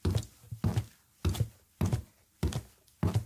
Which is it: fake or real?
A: real